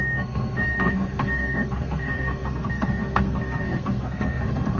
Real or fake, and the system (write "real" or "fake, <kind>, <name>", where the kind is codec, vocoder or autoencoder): fake, codec, SNAC